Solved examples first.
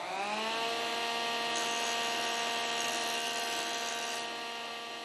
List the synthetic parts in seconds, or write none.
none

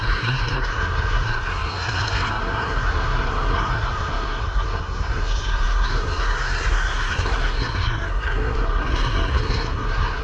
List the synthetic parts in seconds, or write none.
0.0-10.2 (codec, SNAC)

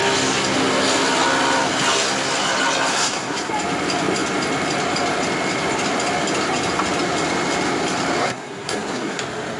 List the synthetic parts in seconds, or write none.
2.9-3.5 (codec, SNAC); 8.2-9.2